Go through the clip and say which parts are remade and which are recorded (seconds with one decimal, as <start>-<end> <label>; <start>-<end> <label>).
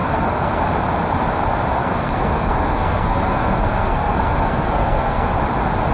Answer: 0.0-0.6 remade; 0.6-1.8 recorded; 1.8-5.3 remade; 5.3-5.9 recorded